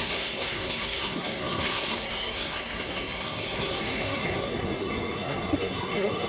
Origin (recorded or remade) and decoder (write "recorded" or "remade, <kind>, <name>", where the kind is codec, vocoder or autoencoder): remade, codec, SNAC